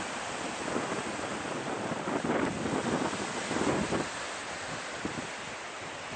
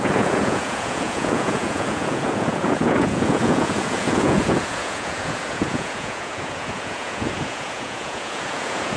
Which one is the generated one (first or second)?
second